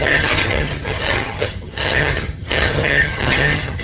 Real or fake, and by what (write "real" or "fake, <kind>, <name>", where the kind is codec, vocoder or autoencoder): fake, vocoder, HiFi-GAN